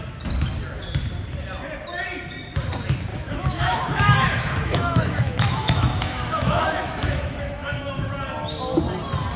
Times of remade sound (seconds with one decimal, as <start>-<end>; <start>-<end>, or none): 3.1-8.1